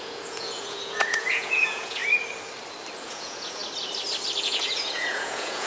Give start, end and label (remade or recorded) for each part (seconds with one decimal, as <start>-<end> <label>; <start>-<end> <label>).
0.0-2.0 remade; 2.0-3.0 recorded; 3.0-3.6 remade; 3.6-4.4 recorded; 4.4-5.7 remade